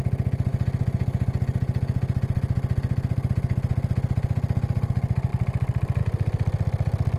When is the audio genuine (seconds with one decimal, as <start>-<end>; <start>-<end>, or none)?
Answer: 0.0-7.2